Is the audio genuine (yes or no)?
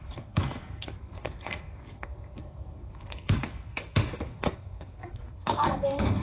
no